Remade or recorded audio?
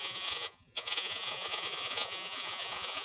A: remade